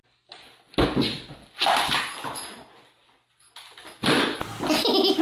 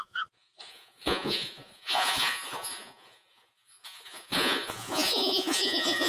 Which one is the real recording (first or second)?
first